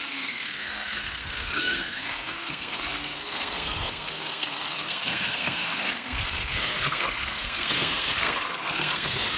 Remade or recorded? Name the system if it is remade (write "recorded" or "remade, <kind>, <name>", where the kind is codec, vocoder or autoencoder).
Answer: remade, codec, SNAC